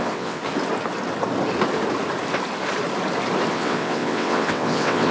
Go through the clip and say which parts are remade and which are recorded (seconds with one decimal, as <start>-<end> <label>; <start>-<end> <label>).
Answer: 0.0-0.4 remade; 0.4-3.5 recorded; 3.5-5.1 remade